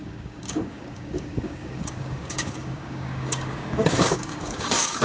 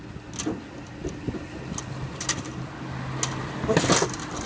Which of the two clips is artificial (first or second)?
first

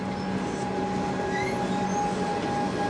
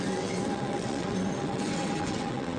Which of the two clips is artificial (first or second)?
second